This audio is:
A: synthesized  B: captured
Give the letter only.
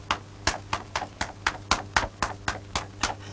B